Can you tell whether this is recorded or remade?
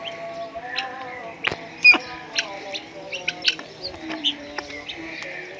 recorded